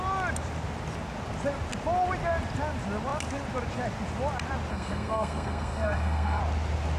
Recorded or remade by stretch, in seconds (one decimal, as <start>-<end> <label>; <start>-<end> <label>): 0.0-4.7 recorded; 4.7-6.4 remade; 6.4-7.0 recorded